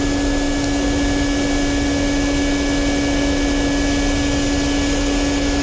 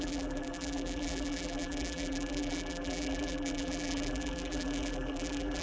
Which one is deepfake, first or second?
second